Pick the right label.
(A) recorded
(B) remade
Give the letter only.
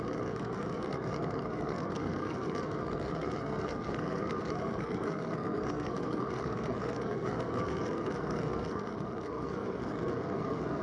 B